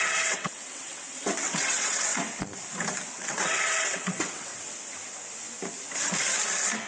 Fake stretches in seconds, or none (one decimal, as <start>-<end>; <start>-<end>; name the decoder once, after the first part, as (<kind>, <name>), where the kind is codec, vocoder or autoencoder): 0.0-2.1 (vocoder, WaveNeXt); 3.1-4.5

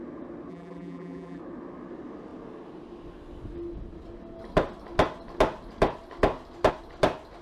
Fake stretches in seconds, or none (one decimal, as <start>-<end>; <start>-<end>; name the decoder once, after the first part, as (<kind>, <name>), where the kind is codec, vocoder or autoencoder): 0.5-1.4 (vocoder, BigVGAN v2)

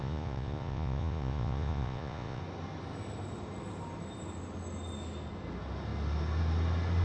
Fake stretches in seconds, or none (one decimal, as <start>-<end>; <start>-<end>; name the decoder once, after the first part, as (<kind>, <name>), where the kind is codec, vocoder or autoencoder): 0.0-2.4 (vocoder, Vocos)

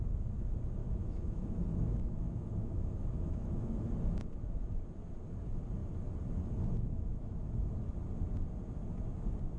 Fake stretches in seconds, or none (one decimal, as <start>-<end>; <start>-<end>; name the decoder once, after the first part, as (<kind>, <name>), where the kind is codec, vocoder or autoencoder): 0.8-3.9 (autoencoder, DAC-VAE); 7.1-7.7

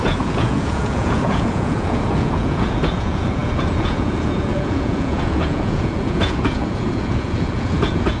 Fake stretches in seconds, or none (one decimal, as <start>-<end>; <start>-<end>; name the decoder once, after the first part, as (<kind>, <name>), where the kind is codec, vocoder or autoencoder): 0.0-8.2 (vocoder, Vocos)